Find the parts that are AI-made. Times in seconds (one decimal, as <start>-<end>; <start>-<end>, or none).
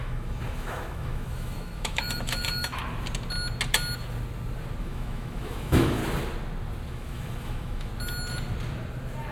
0.0-2.8; 4.8-6.0; 6.9-7.9